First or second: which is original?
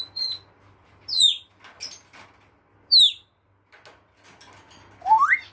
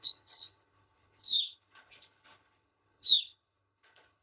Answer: first